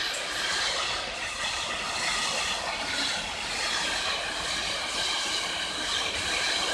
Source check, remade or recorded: recorded